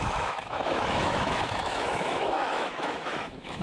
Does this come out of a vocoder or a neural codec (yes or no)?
yes